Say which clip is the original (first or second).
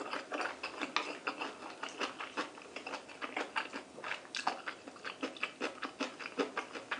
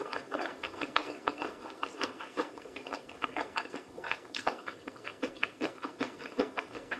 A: first